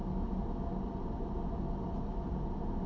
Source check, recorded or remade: recorded